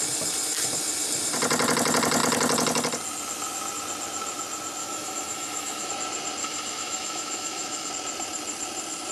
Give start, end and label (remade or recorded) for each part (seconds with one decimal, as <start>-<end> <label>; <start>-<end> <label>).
0.0-4.8 recorded; 4.8-5.9 remade; 5.9-6.4 recorded; 6.4-7.9 remade; 7.9-9.1 recorded